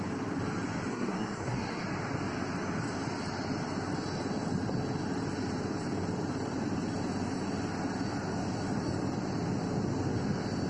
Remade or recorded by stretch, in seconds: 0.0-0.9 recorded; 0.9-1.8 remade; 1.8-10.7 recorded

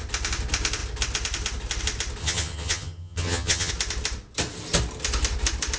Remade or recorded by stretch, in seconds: 0.0-2.2 recorded; 2.2-3.7 remade; 3.7-5.8 recorded

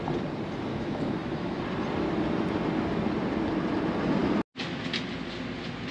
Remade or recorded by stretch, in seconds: 0.0-0.7 recorded; 0.7-1.6 remade; 1.6-5.9 recorded